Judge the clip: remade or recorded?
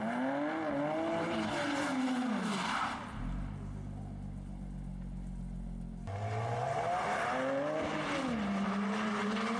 recorded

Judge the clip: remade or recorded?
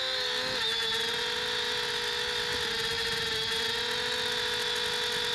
recorded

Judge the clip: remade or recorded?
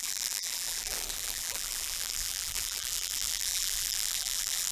remade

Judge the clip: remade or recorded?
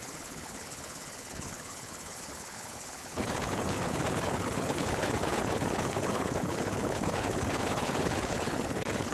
remade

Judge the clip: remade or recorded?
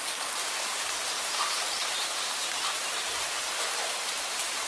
remade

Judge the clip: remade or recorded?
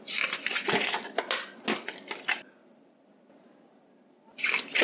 recorded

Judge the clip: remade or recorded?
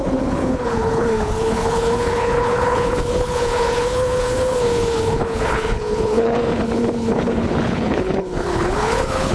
remade